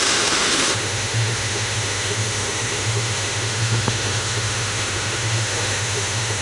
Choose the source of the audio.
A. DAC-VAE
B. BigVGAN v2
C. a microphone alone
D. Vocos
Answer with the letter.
A